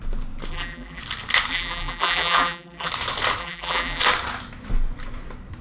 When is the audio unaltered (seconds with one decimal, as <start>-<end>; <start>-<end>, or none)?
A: 0.0-0.5; 1.0-1.5; 2.9-3.4; 4.0-5.6